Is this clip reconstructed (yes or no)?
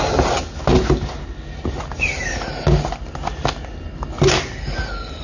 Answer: no